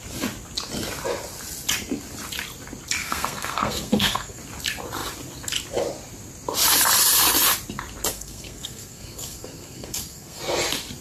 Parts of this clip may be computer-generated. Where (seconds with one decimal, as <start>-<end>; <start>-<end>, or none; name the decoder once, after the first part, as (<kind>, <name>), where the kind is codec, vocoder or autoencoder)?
3.0-4.4 (codec, SNAC); 8.1-10.4